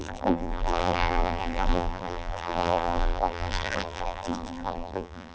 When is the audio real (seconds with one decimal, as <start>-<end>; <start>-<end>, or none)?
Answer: none